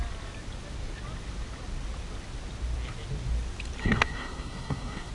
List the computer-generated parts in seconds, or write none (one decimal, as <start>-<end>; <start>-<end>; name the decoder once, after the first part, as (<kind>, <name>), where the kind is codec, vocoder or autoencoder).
3.8-5.1 (codec, SNAC)